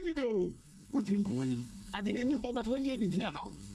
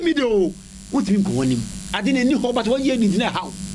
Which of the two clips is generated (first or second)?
first